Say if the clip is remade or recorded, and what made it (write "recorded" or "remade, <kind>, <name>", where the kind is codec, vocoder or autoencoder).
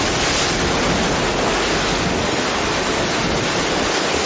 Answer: recorded